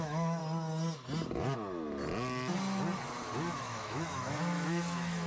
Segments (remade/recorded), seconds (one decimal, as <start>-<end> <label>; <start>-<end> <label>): 0.0-0.4 remade; 0.4-3.6 recorded; 3.6-5.3 remade